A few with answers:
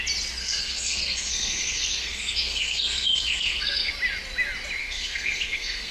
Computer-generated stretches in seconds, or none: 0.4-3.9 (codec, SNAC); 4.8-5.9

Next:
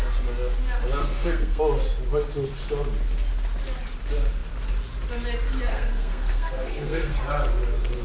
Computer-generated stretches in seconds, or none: 1.0-1.6 (codec, SNAC); 5.7-7.2

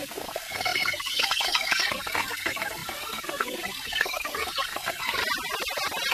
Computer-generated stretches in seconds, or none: 0.0-5.2 (codec, SNAC)

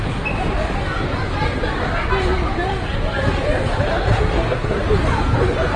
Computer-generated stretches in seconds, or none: 3.9-4.8 (codec, SNAC)

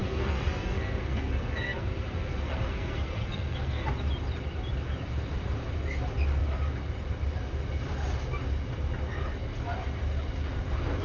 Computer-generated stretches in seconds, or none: 0.0-3.9 (codec, SNAC)

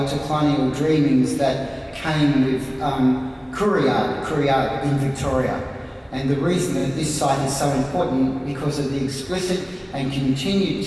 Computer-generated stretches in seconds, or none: 9.1-9.8 (codec, SNAC)

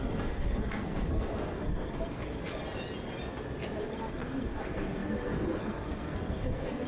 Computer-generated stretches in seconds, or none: 0.0-2.4 (codec, SNAC); 3.8-6.9

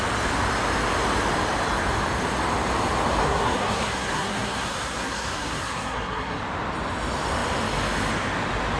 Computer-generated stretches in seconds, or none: 3.2-6.4 (codec, SNAC)